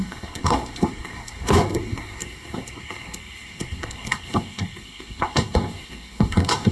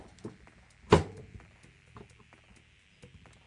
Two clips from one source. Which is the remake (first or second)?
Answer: first